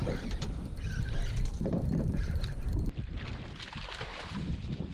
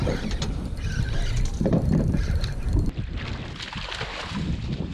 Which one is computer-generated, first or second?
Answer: first